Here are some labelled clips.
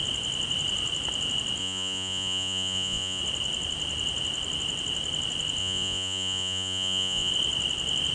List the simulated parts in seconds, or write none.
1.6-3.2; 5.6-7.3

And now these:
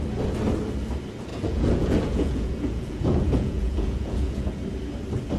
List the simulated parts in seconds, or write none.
1.3-4.5

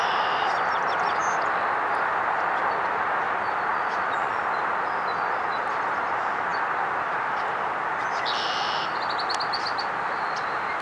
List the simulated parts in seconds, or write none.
3.7-4.4